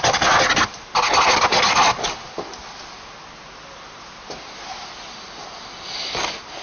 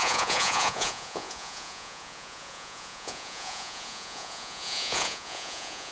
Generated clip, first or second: second